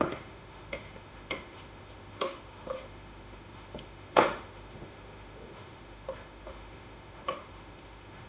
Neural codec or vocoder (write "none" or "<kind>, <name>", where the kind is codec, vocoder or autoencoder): autoencoder, DAC-VAE